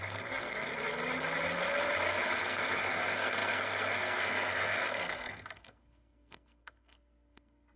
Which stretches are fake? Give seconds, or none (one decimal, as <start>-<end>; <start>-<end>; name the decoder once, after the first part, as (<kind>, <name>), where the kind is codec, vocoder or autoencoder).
0.0-0.7 (codec, SNAC); 2.4-7.8